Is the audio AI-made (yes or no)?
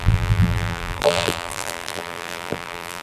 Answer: yes